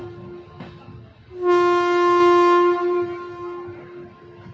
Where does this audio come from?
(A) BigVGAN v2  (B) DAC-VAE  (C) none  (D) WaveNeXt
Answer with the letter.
C